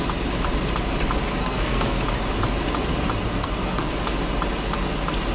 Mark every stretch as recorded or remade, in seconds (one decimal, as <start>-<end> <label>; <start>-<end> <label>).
0.0-1.4 recorded; 1.4-2.0 remade; 2.0-3.4 recorded; 3.4-3.9 remade; 3.9-5.3 recorded